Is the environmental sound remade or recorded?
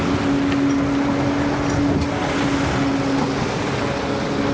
recorded